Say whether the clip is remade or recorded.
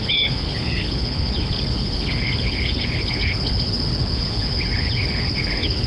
remade